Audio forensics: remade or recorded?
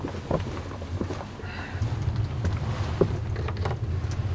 recorded